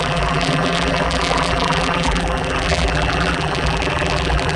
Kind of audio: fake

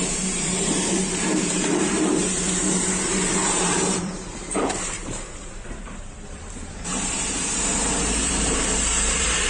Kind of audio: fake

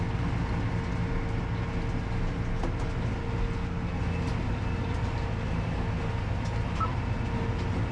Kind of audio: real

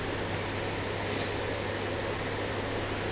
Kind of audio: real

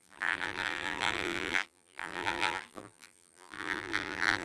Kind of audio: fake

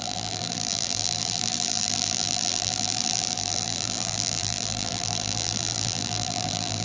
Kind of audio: fake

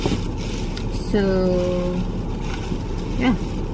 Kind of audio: real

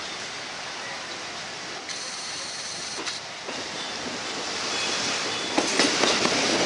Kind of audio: real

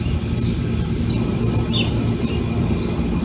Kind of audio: real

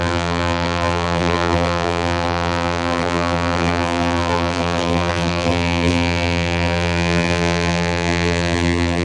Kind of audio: fake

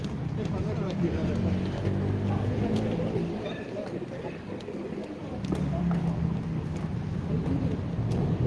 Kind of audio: real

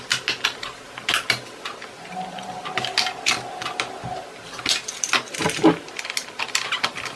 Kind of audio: real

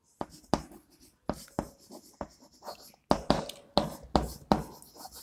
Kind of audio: real